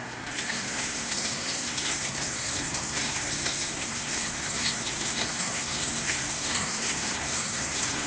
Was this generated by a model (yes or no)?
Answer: yes